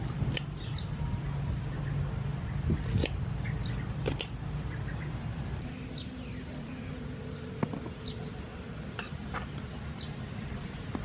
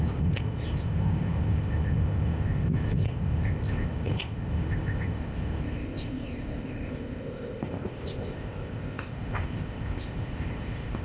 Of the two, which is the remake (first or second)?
second